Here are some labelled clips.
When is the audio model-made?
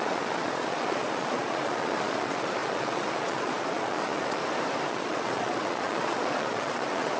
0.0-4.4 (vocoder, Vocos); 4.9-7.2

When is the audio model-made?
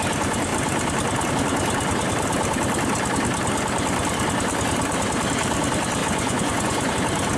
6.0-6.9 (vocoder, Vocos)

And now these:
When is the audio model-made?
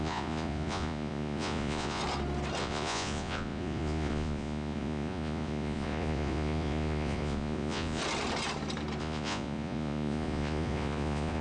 0.0-2.0 (vocoder, Vocos); 2.6-8.0; 9.0-11.4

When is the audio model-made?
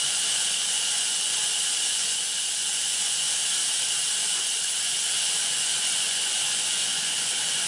0.0-3.4 (vocoder, Vocos); 4.2-7.7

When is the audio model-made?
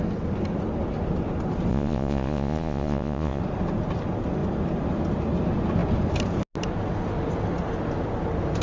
1.7-3.4 (vocoder, Vocos)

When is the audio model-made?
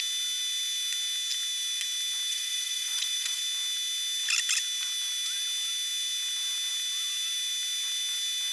2.3-3.4 (vocoder, Vocos)